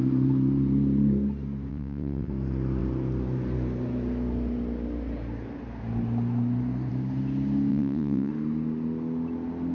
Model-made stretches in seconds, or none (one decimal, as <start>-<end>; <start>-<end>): 1.7-2.3; 7.7-8.3